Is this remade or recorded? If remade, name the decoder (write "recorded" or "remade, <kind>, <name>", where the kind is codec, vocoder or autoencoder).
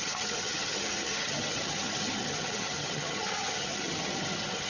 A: remade, vocoder, HiFi-GAN